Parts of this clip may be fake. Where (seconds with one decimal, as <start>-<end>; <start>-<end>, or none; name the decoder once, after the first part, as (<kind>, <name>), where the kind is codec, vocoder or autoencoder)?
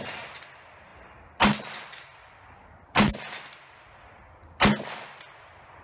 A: none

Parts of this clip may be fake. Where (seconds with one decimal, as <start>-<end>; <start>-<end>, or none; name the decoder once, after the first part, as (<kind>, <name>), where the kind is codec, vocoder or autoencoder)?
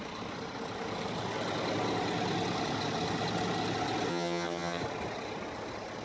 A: 4.1-4.8 (vocoder, HiFi-GAN)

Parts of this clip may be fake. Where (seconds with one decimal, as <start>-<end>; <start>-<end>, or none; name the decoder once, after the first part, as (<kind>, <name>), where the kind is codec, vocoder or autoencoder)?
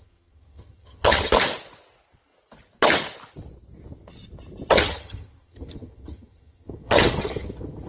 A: 0.0-1.3 (vocoder, HiFi-GAN); 4.7-7.9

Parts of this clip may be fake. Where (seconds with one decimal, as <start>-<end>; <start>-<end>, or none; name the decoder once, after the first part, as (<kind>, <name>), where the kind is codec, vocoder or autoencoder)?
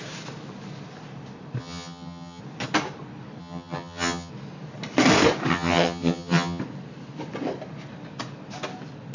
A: 1.6-2.4 (vocoder, HiFi-GAN); 3.4-4.3; 5.5-6.6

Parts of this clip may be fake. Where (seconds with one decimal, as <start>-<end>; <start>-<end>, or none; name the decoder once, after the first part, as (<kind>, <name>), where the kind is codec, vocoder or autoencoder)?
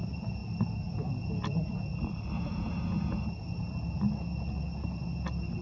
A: none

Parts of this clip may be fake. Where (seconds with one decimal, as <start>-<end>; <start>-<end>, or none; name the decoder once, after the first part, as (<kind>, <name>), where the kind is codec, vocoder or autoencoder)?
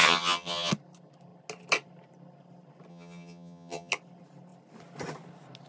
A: 0.0-0.7 (vocoder, HiFi-GAN); 2.9-3.9